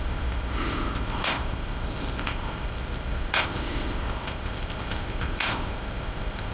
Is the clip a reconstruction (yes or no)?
yes